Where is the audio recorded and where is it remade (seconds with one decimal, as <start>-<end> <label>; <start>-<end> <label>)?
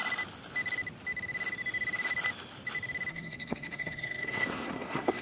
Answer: 0.0-3.1 recorded; 3.1-5.2 remade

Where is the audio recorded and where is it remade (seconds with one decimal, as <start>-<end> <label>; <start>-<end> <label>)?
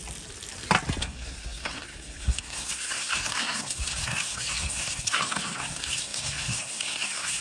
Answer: 0.0-1.0 recorded; 1.0-7.4 remade